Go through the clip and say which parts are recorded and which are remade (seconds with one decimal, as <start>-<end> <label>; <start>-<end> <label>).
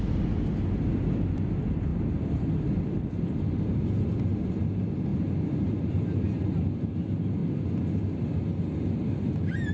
0.0-1.9 recorded; 1.9-3.1 remade; 3.1-5.1 recorded; 5.1-6.5 remade; 6.5-9.7 recorded